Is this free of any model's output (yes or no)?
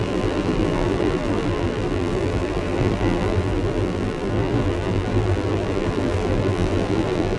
no